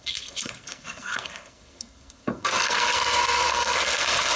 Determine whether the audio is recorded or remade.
remade